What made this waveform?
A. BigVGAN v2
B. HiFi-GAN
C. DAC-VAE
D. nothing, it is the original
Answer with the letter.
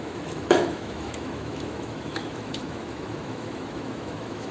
C